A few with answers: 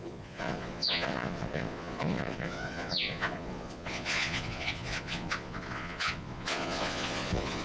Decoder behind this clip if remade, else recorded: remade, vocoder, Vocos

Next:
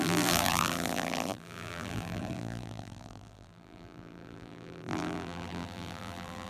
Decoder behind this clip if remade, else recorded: remade, vocoder, BigVGAN v2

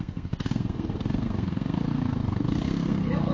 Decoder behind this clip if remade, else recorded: remade, codec, SNAC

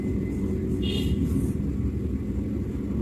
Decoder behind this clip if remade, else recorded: recorded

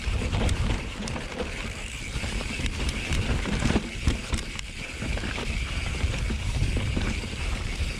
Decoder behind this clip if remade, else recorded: remade, vocoder, BigVGAN v2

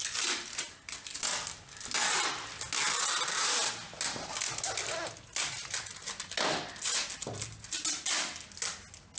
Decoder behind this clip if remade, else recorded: recorded